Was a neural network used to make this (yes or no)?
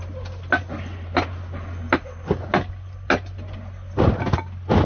no